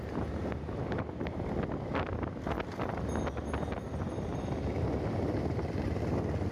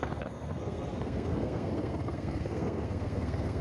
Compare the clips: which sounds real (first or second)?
first